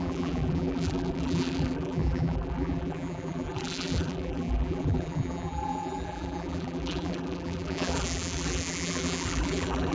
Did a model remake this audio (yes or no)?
yes